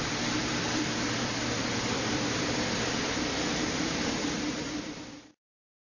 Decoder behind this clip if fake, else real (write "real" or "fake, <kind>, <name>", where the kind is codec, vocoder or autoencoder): fake, vocoder, BigVGAN v2